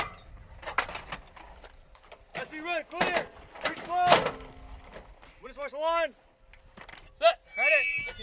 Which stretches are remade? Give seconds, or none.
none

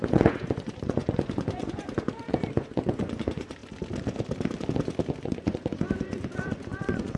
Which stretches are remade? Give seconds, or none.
0.0-3.6 (vocoder, Vocos); 5.2-7.2